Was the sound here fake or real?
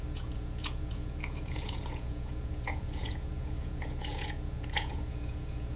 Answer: fake